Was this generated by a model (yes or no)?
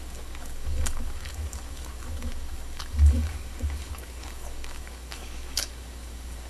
yes